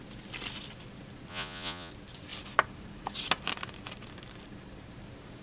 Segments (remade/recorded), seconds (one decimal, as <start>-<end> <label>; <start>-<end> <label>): 0.0-1.3 recorded; 1.3-1.9 remade; 1.9-5.4 recorded